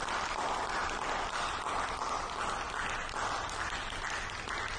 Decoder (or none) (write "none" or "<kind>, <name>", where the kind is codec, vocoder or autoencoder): none